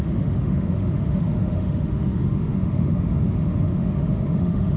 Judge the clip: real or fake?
fake